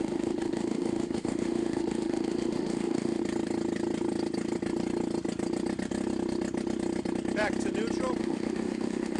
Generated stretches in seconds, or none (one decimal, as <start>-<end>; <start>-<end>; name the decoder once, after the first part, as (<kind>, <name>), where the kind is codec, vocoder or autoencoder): 0.0-3.2 (autoencoder, DAC-VAE); 8.2-9.2